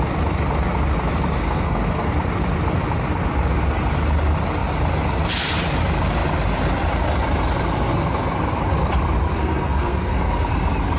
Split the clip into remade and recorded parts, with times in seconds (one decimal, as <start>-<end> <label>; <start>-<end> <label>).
0.0-1.4 recorded; 1.4-2.1 remade; 2.1-9.4 recorded; 9.4-10.5 remade; 10.5-11.0 recorded